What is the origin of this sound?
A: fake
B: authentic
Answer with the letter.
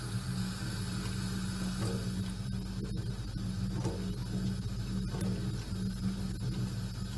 B